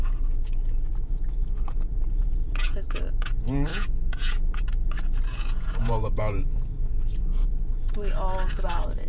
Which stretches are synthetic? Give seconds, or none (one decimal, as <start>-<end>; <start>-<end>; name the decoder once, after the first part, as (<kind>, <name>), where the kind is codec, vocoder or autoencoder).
0.0-9.1 (vocoder, Vocos)

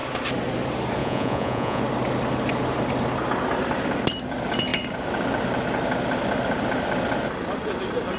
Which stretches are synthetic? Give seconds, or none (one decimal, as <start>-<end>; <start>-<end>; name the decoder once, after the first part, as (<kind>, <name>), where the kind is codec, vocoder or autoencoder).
1.0-1.8 (vocoder, Vocos)

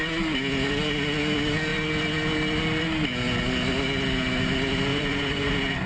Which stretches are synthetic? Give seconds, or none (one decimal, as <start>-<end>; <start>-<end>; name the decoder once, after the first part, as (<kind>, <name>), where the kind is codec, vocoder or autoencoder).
4.9-5.5 (vocoder, Vocos)

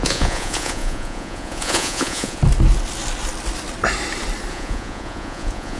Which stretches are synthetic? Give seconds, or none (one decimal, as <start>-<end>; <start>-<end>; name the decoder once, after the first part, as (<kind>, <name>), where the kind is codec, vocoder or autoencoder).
0.0-2.4 (vocoder, Vocos); 4.5-5.8

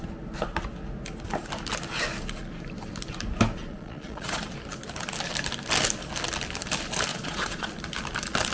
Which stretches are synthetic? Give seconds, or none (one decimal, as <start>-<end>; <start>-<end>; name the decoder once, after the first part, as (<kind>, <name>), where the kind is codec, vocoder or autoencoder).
3.6-4.4 (vocoder, Vocos); 7.1-7.7

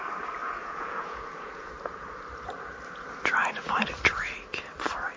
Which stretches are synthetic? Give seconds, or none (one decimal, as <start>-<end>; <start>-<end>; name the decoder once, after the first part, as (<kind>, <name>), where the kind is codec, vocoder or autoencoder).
0.4-1.7 (vocoder, Vocos)

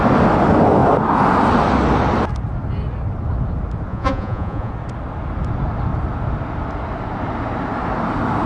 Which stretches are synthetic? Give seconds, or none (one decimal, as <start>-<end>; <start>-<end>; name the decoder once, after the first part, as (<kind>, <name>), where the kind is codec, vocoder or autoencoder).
3.9-4.7 (vocoder, Vocos)